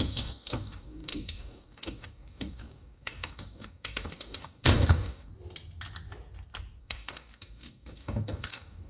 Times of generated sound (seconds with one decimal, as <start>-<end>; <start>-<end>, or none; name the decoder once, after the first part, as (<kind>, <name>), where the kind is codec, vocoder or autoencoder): 0.0-5.3 (codec, DAC); 6.8-8.9